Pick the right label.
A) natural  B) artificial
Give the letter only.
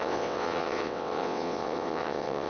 B